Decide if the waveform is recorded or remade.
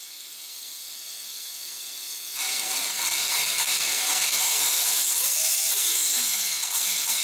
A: remade